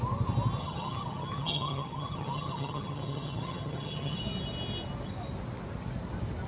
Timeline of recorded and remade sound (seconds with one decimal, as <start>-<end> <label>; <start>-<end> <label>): 0.0-0.6 recorded; 0.6-4.2 remade; 4.2-6.5 recorded